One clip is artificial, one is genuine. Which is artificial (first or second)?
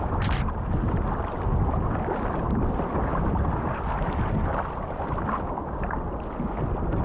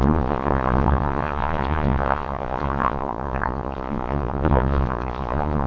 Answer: second